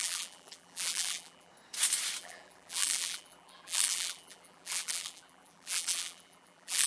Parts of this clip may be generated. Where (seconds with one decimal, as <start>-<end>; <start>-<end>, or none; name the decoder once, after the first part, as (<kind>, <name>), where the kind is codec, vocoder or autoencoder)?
0.0-1.5 (vocoder, BigVGAN v2); 2.2-6.9